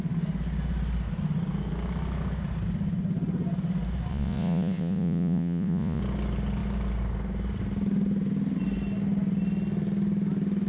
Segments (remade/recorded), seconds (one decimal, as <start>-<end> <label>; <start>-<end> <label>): 0.0-4.1 recorded; 4.1-6.0 remade; 6.0-10.7 recorded